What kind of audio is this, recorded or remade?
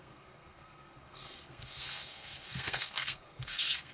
remade